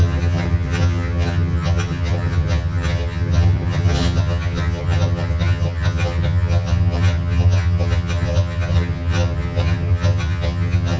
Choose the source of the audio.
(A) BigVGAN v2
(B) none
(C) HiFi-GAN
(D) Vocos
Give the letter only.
C